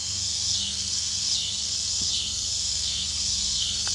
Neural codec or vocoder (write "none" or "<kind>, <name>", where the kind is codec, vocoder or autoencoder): codec, SNAC